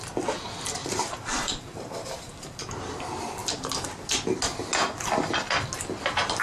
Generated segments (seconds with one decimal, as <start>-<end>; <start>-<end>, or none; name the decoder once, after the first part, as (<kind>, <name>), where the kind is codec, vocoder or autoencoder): 0.8-2.6 (vocoder, BigVGAN v2)